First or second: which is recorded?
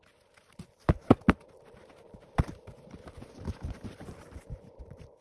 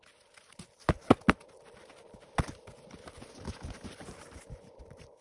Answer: second